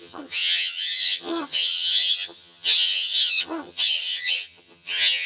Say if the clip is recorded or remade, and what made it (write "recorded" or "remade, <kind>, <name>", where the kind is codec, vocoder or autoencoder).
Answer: remade, vocoder, HiFi-GAN